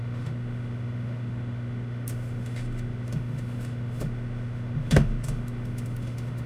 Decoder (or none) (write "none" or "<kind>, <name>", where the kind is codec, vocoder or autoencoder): autoencoder, DAC-VAE